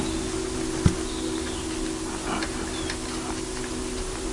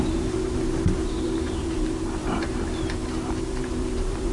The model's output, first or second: second